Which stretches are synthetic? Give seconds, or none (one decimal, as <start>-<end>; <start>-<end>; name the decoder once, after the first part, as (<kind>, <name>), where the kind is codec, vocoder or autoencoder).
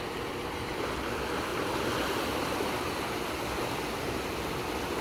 none